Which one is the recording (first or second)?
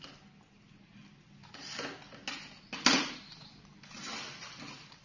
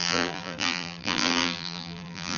first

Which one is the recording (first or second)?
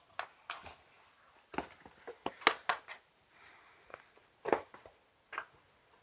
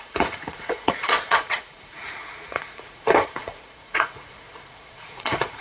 first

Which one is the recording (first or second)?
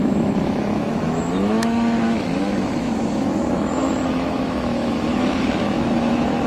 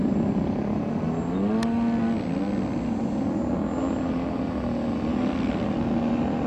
second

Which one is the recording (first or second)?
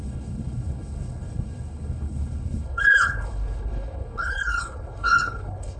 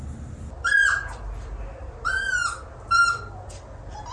second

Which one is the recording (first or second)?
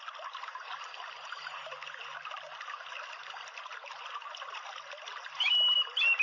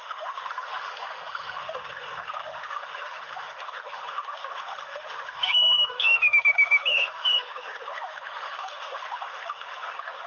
first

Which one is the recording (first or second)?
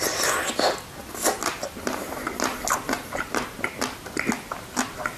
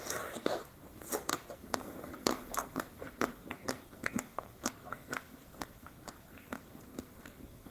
first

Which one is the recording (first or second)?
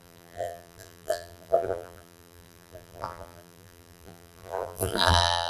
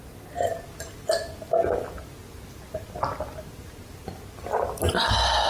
second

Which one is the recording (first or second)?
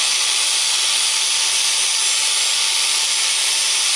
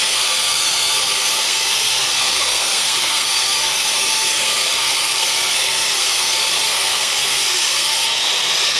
first